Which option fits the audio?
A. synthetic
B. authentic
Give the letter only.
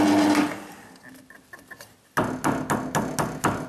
B